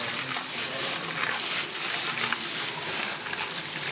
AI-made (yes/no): no